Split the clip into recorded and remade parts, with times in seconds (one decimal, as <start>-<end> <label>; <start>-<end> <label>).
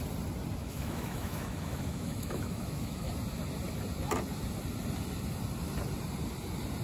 0.0-0.6 recorded; 0.6-3.1 remade; 3.1-6.8 recorded